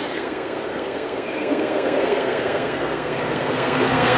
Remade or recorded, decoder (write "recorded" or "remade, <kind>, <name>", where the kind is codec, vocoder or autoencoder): remade, codec, SNAC